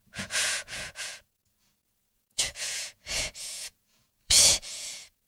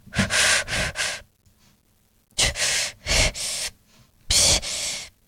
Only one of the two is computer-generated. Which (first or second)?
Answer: first